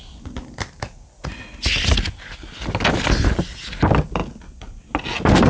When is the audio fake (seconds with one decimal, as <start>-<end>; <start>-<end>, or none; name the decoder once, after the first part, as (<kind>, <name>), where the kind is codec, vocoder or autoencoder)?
none